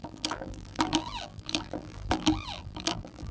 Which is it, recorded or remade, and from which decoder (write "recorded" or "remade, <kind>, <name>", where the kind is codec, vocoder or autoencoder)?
remade, vocoder, BigVGAN v2